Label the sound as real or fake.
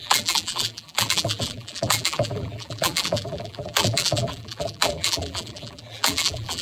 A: fake